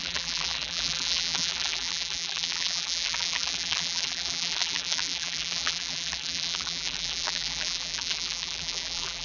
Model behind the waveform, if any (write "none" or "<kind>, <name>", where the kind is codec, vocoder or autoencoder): vocoder, BigVGAN v2